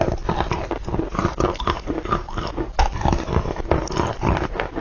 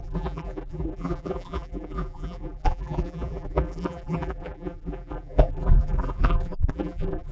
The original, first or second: first